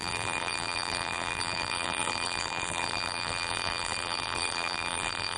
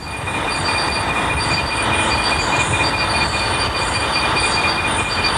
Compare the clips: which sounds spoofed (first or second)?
first